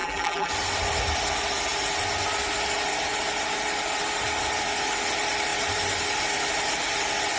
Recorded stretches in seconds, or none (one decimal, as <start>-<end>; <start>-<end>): 0.5-7.4